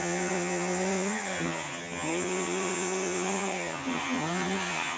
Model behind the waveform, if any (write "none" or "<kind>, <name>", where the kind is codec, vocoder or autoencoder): vocoder, HiFi-GAN